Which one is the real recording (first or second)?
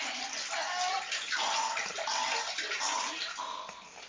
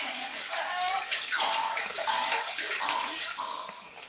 first